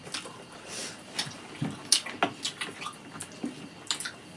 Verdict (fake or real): real